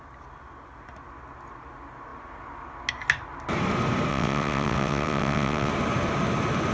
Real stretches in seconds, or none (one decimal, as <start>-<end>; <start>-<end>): 0.0-4.1; 5.7-6.7